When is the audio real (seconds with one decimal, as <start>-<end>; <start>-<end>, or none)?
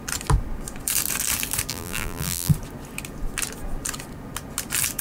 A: 0.0-1.7; 2.5-5.0